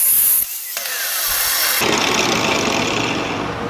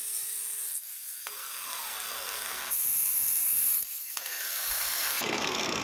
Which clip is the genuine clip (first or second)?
first